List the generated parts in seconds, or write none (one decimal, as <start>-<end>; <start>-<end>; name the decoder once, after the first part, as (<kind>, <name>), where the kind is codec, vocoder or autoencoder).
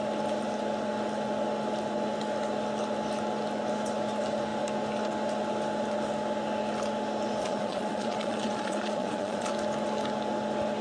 7.4-9.5 (vocoder, Vocos)